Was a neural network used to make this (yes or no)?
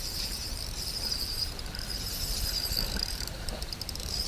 yes